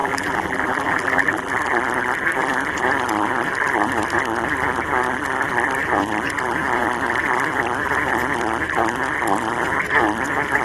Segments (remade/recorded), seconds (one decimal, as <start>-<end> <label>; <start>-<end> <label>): 0.0-1.5 remade; 1.5-10.6 recorded